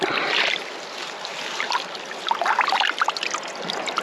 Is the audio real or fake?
real